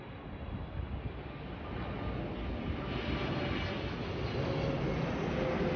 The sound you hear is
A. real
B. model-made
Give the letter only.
A